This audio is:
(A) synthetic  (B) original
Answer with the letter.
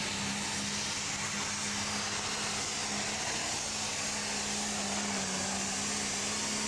B